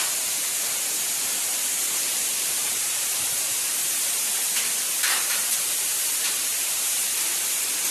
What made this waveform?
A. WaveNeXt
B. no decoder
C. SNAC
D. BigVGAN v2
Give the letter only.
D